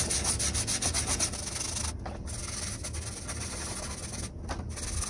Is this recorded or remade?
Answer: recorded